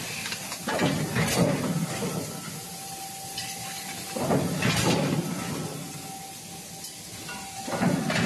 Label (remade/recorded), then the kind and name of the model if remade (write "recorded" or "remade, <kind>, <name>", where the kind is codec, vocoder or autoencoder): recorded